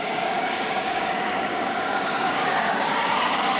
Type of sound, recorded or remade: remade